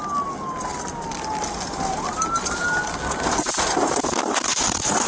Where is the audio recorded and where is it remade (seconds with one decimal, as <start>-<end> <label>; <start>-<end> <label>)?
0.0-5.1 recorded